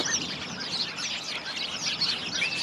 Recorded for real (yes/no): yes